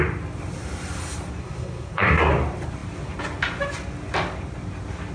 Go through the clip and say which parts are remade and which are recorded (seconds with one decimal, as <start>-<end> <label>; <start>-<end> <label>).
0.0-1.4 recorded; 1.4-2.3 remade; 2.3-5.1 recorded